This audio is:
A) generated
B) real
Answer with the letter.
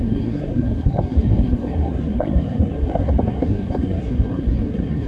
A